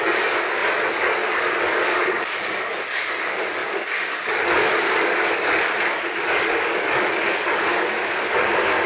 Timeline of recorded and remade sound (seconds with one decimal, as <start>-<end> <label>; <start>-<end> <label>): 0.0-8.9 remade